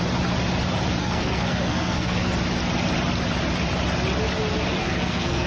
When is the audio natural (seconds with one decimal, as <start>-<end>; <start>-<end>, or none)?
0.0-1.0; 2.3-4.8